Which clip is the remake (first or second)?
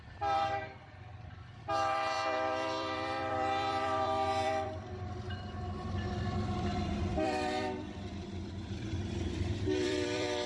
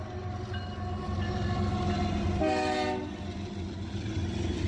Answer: first